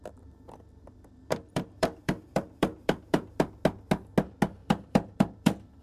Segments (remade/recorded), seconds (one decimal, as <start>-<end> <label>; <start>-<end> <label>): 0.0-3.5 remade; 3.5-4.6 recorded; 4.6-5.8 remade

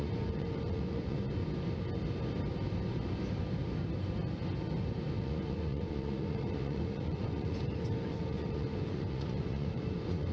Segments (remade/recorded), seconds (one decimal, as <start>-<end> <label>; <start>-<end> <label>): 0.0-1.4 remade; 1.4-5.2 recorded; 5.2-10.3 remade

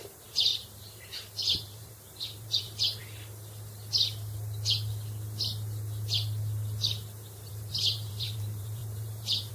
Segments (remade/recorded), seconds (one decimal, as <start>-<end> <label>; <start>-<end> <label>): 0.0-3.0 remade; 3.0-7.5 recorded; 7.5-9.5 remade